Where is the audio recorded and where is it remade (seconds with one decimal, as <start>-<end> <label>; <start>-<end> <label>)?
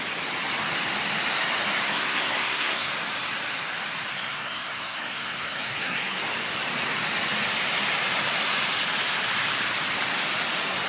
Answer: 0.0-1.8 recorded; 1.8-2.9 remade; 2.9-4.1 recorded; 4.1-6.2 remade; 6.2-10.9 recorded